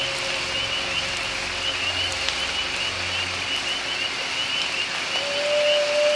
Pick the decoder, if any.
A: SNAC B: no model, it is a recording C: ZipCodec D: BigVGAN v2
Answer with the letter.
B